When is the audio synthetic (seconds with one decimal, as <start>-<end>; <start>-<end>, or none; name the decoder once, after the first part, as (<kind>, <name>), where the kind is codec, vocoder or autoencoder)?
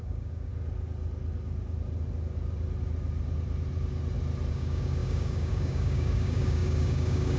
0.0-0.5 (codec, DAC); 4.5-7.4